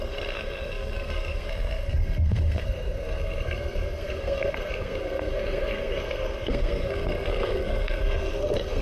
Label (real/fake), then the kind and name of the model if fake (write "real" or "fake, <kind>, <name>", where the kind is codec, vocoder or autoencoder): fake, codec, SNAC